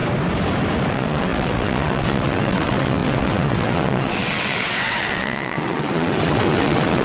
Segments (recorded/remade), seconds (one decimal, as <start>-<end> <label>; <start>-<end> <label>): 0.0-0.9 recorded; 0.9-7.0 remade